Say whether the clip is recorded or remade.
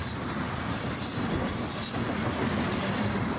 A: recorded